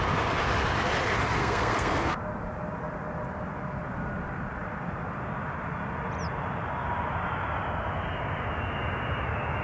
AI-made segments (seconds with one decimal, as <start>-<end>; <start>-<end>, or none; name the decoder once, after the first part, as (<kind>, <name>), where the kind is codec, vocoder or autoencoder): 1.4-2.2 (codec, SNAC)